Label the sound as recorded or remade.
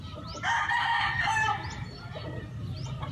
recorded